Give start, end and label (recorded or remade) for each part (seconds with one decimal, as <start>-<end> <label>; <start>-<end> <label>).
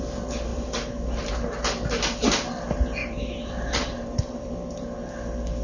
0.0-0.5 recorded; 0.5-1.3 remade; 1.3-3.0 recorded; 3.0-4.5 remade; 4.5-5.6 recorded